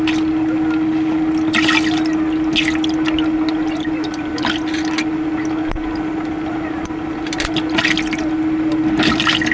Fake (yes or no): no